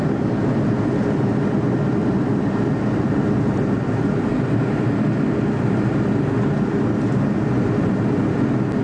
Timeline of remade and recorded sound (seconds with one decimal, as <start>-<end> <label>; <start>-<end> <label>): 0.0-2.0 recorded; 2.0-2.5 remade; 2.5-4.3 recorded; 4.3-4.9 remade; 4.9-8.8 recorded